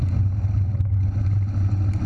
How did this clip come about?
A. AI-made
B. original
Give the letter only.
B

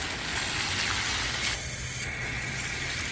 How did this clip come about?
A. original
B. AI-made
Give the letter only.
A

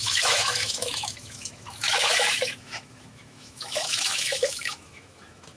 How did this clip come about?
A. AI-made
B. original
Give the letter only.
A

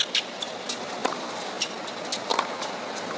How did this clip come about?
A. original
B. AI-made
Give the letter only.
A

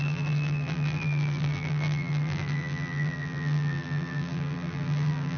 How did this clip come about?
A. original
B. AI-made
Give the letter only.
B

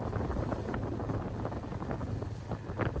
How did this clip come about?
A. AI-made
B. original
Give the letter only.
B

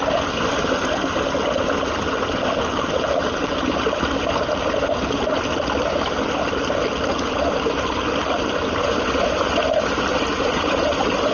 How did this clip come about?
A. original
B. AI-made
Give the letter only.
A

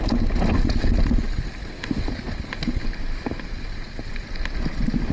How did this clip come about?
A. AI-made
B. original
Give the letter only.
B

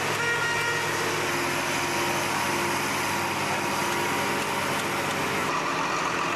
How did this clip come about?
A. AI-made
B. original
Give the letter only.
B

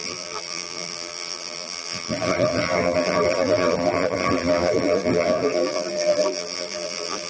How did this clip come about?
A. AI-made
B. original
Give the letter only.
A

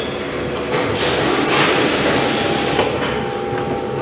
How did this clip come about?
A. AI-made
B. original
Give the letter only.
B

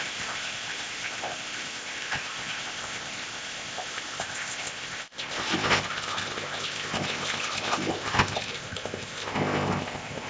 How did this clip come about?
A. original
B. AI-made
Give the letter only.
B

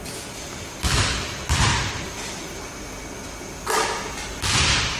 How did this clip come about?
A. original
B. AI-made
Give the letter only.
A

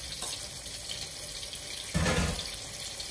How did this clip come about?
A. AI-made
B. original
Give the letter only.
B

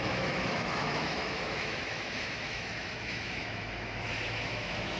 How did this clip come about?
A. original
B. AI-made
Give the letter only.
B